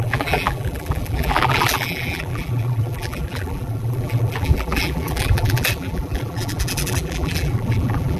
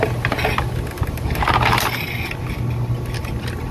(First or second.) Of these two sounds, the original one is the second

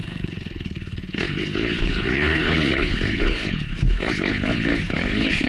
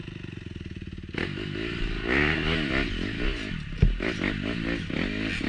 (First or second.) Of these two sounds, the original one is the second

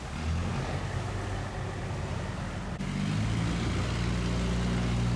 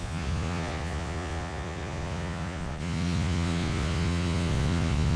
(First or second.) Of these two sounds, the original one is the first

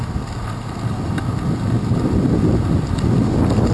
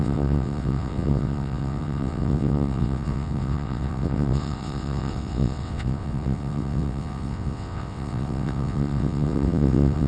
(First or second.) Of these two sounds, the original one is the first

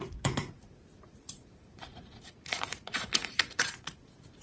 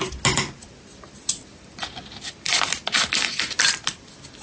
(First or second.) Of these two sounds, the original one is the second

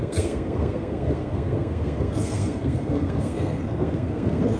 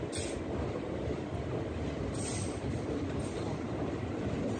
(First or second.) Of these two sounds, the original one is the second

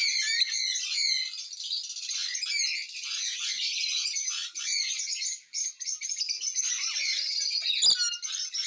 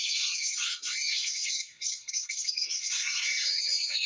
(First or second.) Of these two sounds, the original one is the first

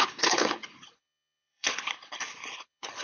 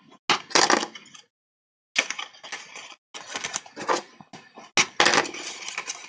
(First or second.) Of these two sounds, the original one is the second